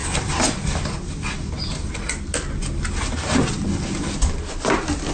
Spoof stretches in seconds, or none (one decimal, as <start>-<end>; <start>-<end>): none